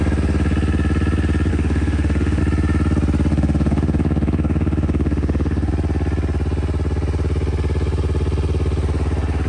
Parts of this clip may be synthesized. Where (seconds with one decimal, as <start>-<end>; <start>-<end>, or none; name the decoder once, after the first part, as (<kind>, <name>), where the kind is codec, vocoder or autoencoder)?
1.5-2.4 (autoencoder, DAC-VAE); 3.3-5.7